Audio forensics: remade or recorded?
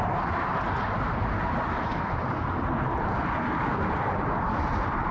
recorded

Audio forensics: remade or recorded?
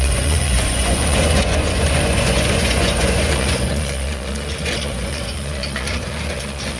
remade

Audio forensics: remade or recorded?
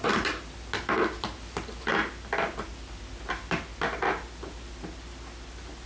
recorded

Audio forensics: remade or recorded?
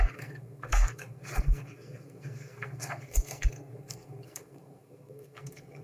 remade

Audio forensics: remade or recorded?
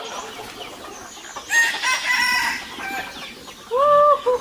recorded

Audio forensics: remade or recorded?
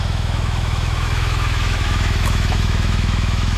remade